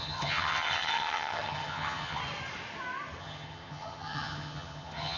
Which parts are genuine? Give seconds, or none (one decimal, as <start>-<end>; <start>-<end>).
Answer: 2.2-3.2